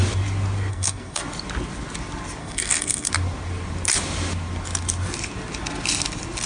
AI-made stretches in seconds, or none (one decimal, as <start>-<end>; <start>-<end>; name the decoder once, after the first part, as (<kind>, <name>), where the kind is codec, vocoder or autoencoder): 0.7-1.2 (codec, SNAC); 2.4-3.1